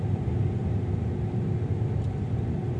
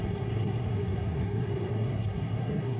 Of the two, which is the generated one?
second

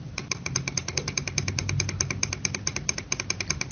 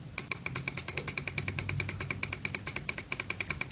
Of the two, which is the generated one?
first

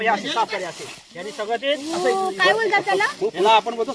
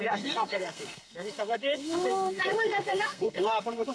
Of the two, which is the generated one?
second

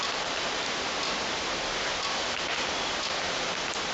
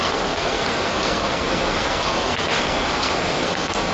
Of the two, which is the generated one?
second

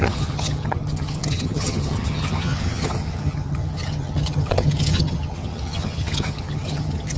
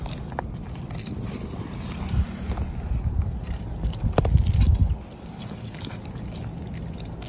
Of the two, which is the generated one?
first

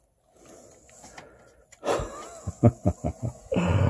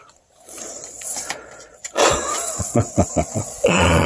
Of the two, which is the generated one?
second